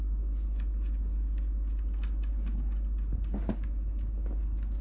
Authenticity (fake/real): real